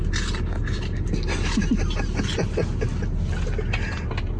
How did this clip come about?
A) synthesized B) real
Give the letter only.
B